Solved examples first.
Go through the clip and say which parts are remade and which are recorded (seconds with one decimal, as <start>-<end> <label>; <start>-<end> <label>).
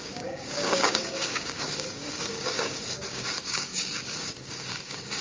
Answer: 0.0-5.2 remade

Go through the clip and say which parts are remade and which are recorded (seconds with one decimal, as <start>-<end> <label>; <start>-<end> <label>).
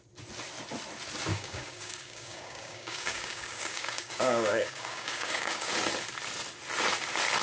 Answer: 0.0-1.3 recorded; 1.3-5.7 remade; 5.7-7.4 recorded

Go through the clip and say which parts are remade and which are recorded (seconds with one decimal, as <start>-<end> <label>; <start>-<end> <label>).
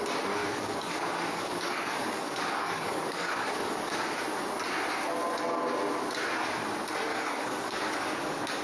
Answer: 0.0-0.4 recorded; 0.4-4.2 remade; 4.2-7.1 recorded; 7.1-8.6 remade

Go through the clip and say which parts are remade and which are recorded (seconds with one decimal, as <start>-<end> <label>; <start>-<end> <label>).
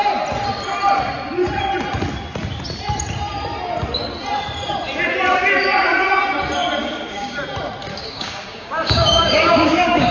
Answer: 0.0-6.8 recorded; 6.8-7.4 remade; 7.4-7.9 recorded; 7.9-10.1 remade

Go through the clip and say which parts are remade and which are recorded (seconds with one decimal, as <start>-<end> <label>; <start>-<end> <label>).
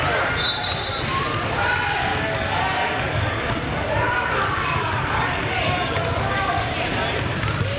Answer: 0.0-2.1 recorded; 2.1-6.6 remade; 6.6-7.8 recorded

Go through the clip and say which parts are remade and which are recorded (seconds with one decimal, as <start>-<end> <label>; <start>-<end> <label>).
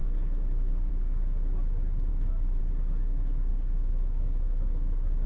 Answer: 0.0-0.9 remade; 0.9-2.1 recorded; 2.1-2.6 remade; 2.6-3.5 recorded; 3.5-5.3 remade